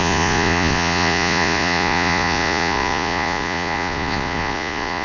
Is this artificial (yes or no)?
yes